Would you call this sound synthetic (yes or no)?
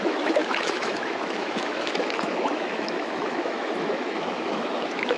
yes